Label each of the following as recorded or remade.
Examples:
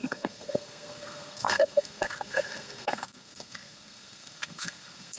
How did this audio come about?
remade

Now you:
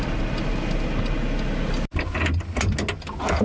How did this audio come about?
recorded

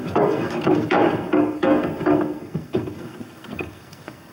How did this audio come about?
remade